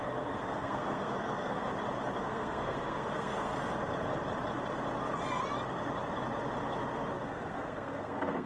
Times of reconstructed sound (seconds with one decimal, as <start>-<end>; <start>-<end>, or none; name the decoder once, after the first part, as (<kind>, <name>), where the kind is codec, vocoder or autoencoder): 0.0-1.7 (codec, SNAC); 2.2-3.5; 7.2-8.5